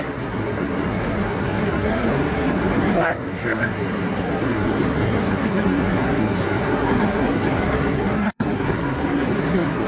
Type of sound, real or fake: fake